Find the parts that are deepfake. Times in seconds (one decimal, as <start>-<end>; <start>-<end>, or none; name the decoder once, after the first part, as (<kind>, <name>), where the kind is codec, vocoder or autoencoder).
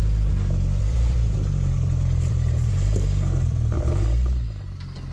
0.8-3.9 (vocoder, BigVGAN v2)